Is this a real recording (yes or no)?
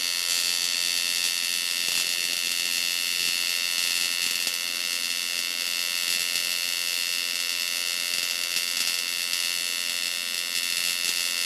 yes